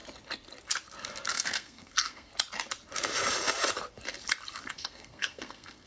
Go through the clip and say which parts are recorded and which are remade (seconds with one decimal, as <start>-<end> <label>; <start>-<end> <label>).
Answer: 0.0-1.3 recorded; 1.3-2.3 remade; 2.3-4.7 recorded; 4.7-5.9 remade